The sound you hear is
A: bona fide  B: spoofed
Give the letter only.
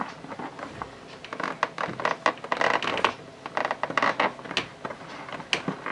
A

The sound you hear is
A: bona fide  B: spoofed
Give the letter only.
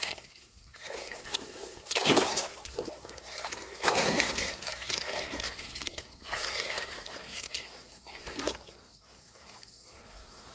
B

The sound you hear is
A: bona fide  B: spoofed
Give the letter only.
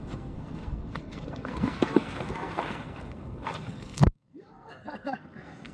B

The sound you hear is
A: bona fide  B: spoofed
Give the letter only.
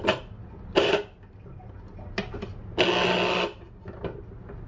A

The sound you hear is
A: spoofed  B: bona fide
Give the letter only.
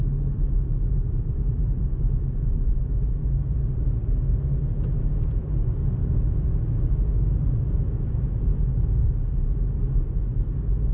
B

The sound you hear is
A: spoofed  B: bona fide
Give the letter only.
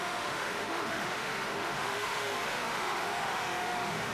A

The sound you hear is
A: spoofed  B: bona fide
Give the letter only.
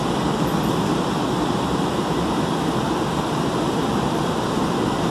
A